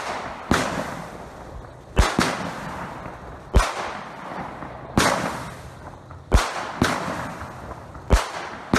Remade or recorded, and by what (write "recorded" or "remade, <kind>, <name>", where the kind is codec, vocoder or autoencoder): recorded